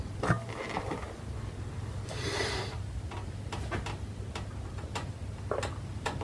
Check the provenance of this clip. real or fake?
real